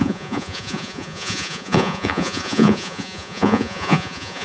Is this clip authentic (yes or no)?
no